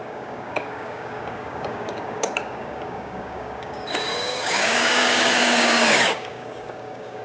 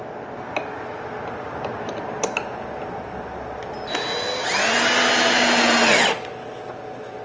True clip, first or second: second